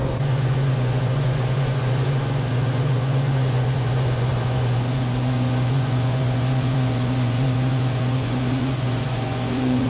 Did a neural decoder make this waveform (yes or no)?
yes